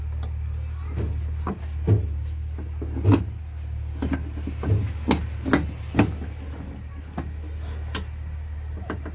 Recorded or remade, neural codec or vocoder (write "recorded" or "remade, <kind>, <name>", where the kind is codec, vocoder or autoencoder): recorded